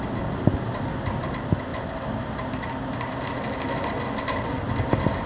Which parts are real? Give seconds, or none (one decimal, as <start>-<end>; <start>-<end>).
0.0-5.3